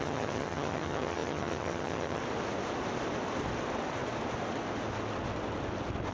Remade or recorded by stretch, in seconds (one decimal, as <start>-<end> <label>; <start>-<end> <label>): 0.0-2.2 remade; 2.2-6.1 recorded